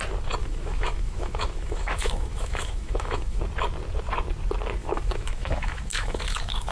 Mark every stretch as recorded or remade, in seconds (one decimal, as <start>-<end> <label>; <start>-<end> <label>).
0.0-0.4 recorded; 0.4-3.4 remade; 3.4-4.8 recorded; 4.8-6.7 remade